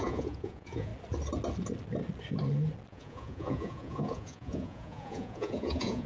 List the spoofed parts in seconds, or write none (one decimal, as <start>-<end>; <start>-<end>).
0.0-0.9; 2.9-6.1